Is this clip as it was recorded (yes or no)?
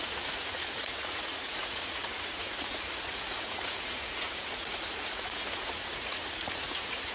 no